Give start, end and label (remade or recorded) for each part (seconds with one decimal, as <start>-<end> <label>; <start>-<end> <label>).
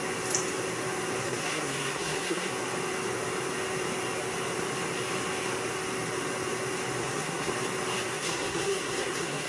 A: 0.0-1.2 recorded; 1.2-2.5 remade; 2.5-7.0 recorded; 7.0-7.5 remade; 7.5-8.1 recorded; 8.1-9.5 remade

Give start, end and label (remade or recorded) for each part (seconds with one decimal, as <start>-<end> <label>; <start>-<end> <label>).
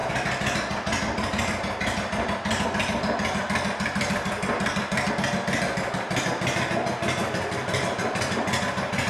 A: 0.0-9.1 recorded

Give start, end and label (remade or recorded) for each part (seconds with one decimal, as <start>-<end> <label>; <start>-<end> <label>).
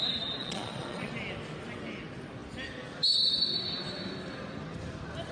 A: 0.0-0.4 recorded; 0.4-1.1 remade; 1.1-5.3 recorded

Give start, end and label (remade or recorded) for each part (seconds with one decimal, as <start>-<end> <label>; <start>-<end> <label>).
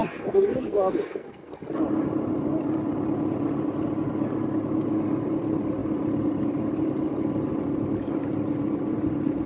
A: 0.0-1.5 remade; 1.5-9.5 recorded